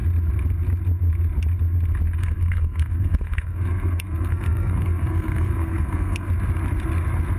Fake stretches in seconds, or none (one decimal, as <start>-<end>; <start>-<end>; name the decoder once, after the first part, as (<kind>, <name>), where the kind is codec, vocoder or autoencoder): 2.2-6.3 (codec, SNAC)